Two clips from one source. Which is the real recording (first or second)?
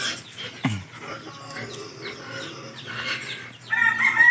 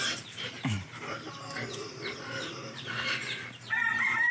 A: first